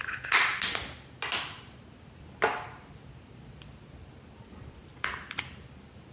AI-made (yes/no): no